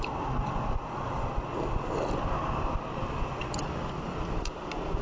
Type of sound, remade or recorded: recorded